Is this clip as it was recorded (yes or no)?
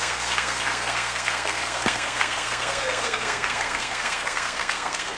no